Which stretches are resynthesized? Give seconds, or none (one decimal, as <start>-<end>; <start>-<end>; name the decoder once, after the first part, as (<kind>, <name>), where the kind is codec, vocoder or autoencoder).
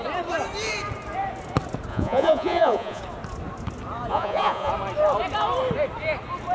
1.9-3.0 (vocoder, Vocos); 4.1-4.7